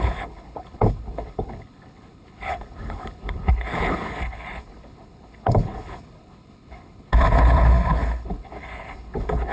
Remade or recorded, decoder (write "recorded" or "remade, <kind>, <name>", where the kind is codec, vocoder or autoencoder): remade, codec, HILCodec